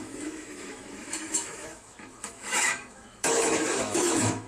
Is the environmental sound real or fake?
fake